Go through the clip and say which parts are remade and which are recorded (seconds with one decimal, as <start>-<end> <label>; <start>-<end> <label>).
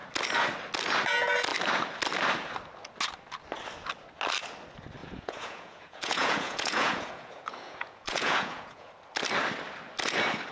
0.0-5.0 recorded; 5.0-8.9 remade; 8.9-10.5 recorded